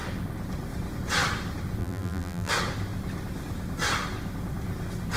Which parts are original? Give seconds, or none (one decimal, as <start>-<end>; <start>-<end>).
0.0-1.8; 2.5-5.2